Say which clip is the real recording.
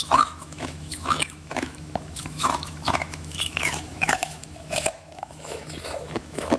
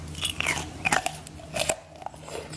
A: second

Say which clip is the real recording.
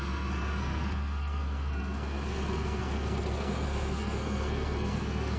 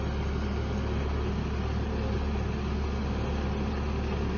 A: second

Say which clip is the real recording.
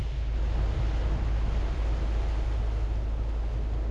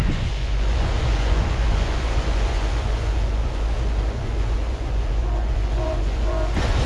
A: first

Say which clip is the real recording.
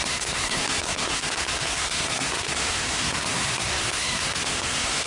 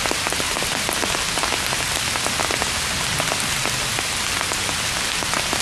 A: second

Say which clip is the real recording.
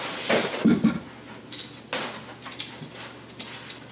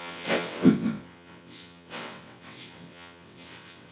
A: first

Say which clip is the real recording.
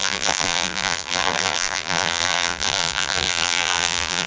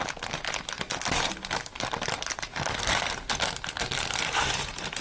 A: second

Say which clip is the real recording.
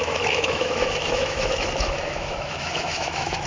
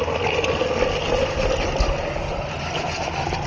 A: second